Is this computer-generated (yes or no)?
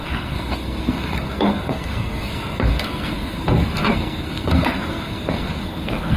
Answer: yes